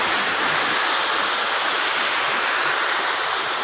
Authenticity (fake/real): real